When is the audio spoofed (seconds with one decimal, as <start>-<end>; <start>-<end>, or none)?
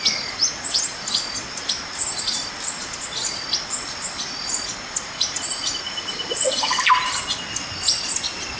5.5-7.2